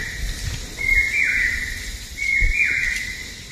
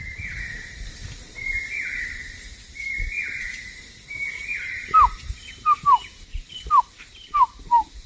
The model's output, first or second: second